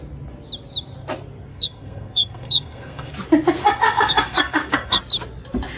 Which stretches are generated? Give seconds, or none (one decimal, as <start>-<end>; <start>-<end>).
1.5-3.1; 3.6-5.0